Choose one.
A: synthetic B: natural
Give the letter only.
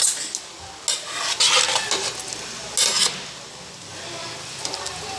B